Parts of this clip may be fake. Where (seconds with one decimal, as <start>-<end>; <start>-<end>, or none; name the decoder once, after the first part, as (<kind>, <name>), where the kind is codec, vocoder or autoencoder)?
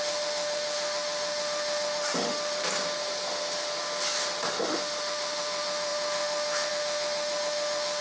0.0-2.6 (autoencoder, DAC-VAE); 4.5-8.0